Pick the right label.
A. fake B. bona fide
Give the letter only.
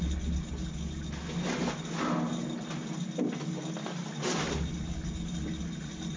B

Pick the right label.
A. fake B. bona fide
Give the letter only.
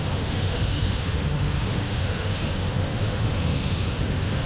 A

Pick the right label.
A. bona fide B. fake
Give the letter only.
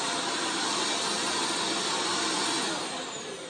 A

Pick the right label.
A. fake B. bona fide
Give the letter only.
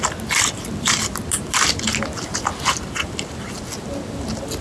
B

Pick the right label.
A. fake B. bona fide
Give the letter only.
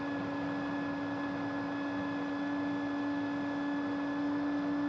B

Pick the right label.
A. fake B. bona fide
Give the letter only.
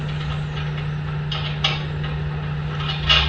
B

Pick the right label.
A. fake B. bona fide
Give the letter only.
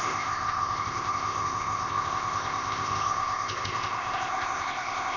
A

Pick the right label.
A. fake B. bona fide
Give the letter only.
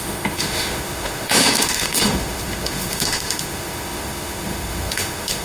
A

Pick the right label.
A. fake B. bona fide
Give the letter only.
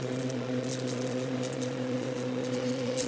A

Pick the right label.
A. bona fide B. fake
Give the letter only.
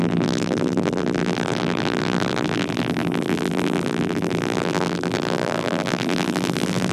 B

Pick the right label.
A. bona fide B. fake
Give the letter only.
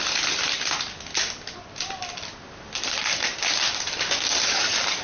A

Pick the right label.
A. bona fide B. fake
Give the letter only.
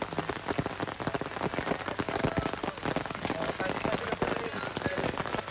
A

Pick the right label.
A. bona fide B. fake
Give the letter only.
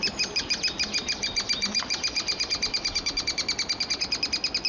A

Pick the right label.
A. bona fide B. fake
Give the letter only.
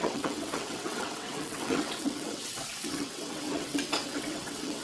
B